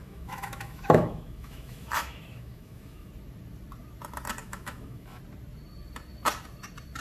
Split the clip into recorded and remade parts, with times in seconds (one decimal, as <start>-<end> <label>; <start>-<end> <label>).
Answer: 0.0-3.1 remade; 3.1-4.4 recorded; 4.4-5.2 remade; 5.2-7.0 recorded